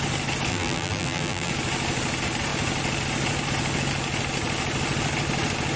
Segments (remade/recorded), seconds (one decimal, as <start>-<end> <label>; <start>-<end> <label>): 0.0-0.5 recorded; 0.5-1.5 remade; 1.5-5.8 recorded